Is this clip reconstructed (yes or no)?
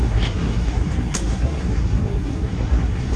yes